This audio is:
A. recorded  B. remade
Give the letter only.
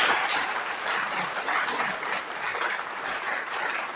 A